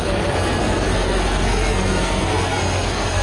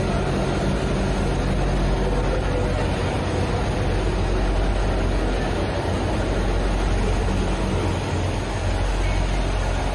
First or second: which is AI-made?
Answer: first